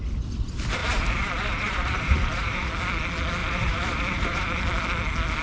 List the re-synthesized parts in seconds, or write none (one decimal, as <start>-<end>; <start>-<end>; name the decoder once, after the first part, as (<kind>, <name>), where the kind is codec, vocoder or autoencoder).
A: 0.8-2.7 (vocoder, BigVGAN v2); 3.4-4.6